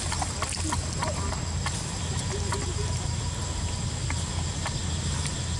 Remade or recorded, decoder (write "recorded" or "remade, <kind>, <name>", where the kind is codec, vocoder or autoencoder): recorded